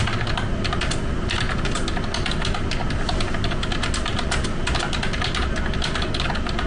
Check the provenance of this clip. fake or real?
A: real